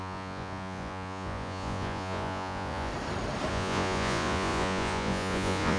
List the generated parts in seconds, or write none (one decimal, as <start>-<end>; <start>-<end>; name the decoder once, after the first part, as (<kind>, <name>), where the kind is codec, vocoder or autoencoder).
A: 0.0-2.9 (vocoder, Vocos); 3.5-5.8